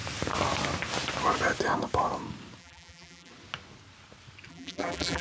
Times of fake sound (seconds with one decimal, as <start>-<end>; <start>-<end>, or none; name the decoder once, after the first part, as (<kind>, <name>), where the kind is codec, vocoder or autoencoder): 2.6-3.3 (vocoder, BigVGAN v2); 4.5-5.2